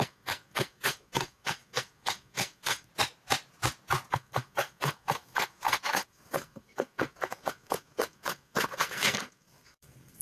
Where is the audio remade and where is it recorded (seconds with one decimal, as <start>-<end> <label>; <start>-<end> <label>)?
0.0-2.9 remade; 2.9-4.1 recorded; 4.1-10.2 remade